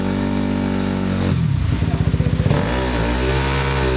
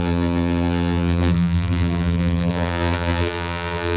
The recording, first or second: first